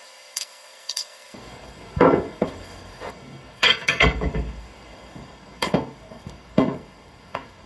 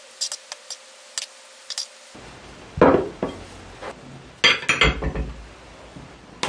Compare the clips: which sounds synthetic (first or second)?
first